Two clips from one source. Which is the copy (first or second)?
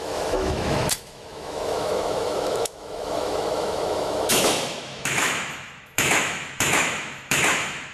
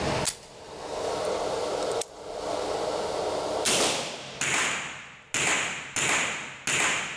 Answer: first